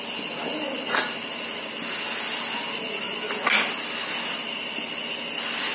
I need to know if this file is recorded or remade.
recorded